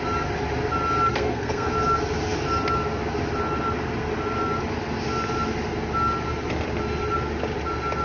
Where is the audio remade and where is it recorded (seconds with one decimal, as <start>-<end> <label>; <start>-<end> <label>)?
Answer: 0.0-1.1 recorded; 1.1-1.7 remade; 1.7-8.0 recorded